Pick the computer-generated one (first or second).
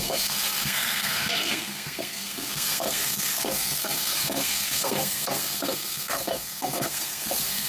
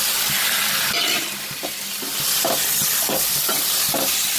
first